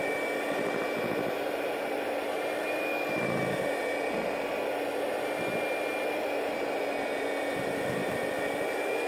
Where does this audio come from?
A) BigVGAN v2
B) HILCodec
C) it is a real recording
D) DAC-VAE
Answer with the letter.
C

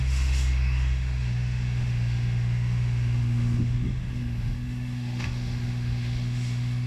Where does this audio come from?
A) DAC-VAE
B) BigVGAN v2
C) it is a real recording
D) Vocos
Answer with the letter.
A